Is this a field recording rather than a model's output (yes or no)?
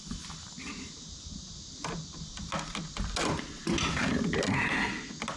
yes